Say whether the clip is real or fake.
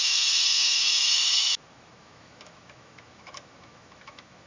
fake